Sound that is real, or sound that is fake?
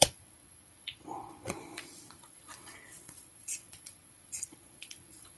fake